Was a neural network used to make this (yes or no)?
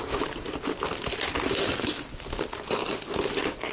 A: no